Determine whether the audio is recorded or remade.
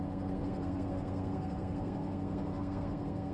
remade